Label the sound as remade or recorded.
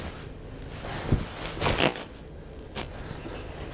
recorded